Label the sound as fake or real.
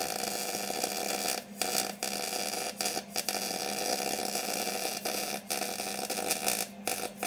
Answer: real